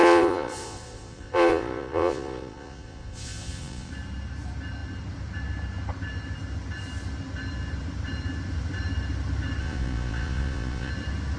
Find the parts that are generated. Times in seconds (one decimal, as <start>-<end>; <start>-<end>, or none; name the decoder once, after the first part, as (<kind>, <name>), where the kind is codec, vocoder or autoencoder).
0.0-3.9 (vocoder, Vocos); 9.6-10.9